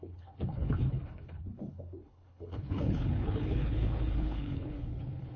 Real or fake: fake